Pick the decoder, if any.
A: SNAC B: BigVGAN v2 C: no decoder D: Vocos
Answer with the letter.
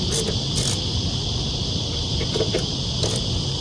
C